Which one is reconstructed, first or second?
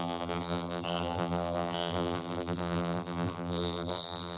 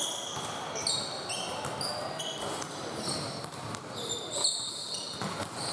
first